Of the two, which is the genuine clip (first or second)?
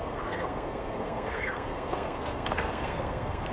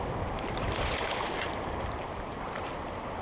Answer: second